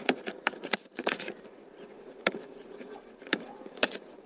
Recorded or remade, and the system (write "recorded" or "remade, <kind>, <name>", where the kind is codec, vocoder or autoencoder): remade, vocoder, Vocos